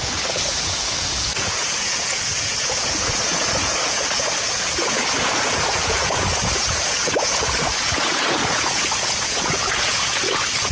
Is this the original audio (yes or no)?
no